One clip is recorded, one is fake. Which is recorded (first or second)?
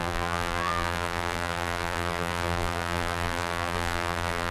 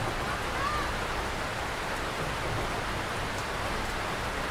second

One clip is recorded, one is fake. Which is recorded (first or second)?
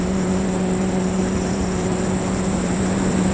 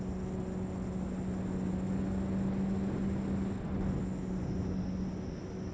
second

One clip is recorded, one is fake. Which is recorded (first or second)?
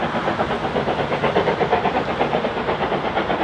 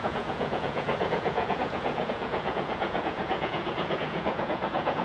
first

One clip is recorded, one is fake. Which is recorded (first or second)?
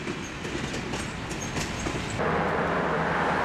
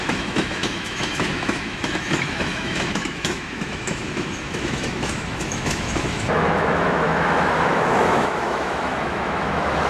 first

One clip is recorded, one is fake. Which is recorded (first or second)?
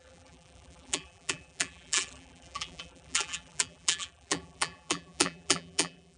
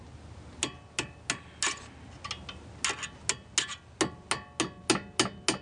second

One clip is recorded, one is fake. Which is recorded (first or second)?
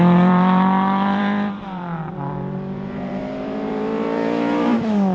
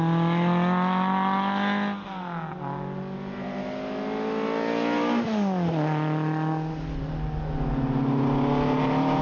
second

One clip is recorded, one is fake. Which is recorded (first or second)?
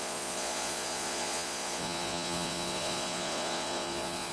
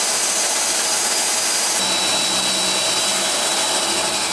second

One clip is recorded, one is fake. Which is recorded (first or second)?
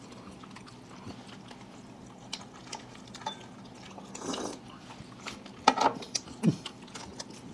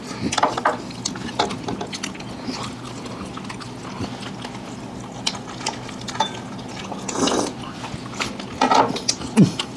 second